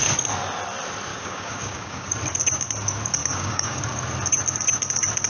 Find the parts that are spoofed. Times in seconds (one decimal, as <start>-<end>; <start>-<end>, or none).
1.1-2.1; 3.2-3.8